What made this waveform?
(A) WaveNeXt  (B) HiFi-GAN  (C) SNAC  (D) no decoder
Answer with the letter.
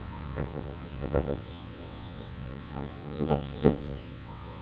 A